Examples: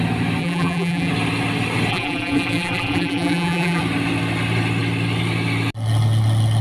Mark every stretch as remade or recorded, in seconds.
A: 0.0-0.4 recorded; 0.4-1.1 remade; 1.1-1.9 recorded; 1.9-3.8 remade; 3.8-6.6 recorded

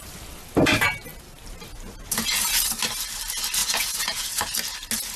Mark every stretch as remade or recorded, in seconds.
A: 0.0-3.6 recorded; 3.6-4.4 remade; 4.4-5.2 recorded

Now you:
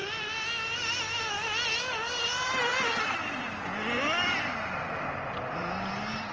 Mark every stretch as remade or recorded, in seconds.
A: 0.0-6.3 recorded

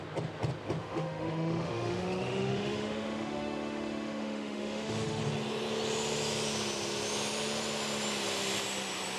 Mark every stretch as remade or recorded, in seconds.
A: 0.0-0.8 recorded; 0.8-5.2 remade; 5.2-9.2 recorded

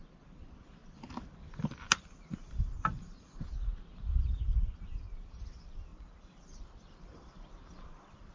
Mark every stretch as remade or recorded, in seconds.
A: 0.0-8.3 recorded